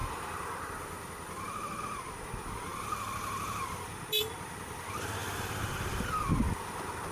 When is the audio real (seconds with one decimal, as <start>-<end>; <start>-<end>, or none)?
1.8-2.7; 3.6-5.2; 6.2-7.1